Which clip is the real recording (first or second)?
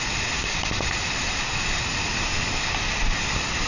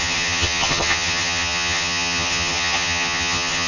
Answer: first